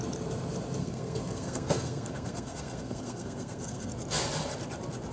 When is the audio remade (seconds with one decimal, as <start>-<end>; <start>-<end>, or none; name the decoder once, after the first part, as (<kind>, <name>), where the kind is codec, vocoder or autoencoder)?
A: 0.8-3.9 (codec, SNAC)